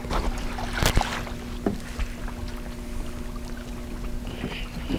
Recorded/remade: recorded